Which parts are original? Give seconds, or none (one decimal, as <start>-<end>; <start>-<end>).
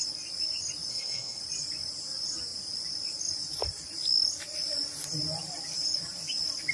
0.0-0.9; 1.4-6.7